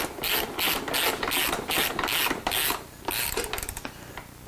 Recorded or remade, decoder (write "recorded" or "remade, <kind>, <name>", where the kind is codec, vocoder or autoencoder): recorded